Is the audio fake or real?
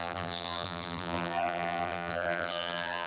fake